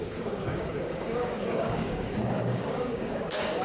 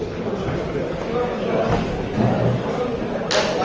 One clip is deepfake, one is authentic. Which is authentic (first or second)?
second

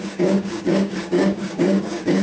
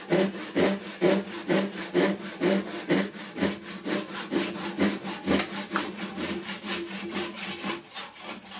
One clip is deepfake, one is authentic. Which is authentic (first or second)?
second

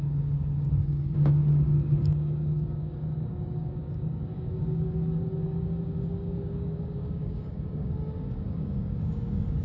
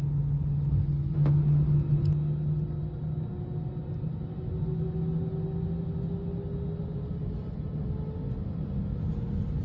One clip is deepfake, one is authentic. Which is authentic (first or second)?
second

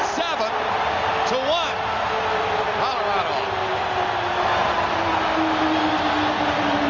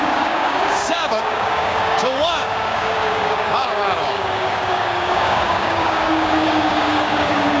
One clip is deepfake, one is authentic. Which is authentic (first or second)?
first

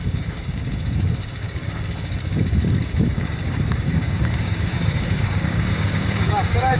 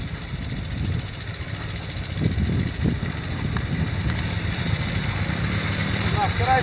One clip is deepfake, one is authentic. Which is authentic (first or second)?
second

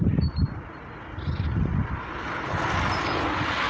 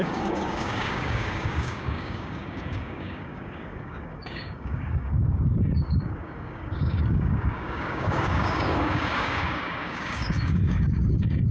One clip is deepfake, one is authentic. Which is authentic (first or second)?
first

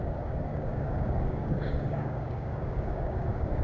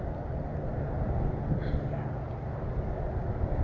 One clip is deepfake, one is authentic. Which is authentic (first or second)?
second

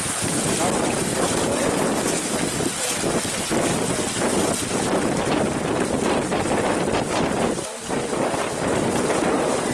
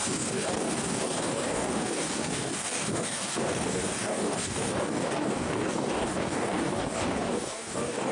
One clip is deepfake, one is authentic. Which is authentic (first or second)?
first